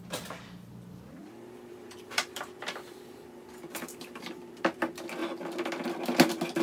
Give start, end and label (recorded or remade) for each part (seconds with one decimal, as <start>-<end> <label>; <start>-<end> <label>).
0.0-1.2 recorded; 1.2-4.8 remade; 4.8-6.6 recorded